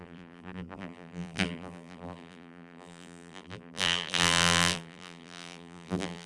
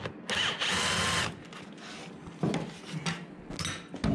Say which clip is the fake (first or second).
first